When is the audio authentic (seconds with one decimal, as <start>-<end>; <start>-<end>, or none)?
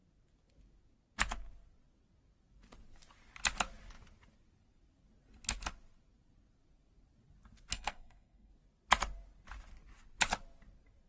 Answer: 0.0-7.7; 8.5-11.1